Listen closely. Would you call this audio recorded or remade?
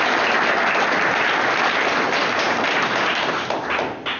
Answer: recorded